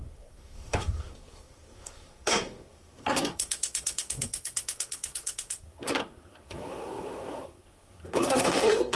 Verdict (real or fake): fake